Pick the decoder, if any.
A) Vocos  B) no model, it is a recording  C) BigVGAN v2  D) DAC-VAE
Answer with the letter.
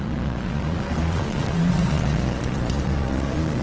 A